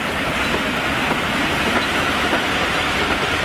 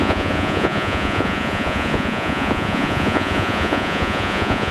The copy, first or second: second